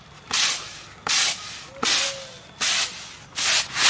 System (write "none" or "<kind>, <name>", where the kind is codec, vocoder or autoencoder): none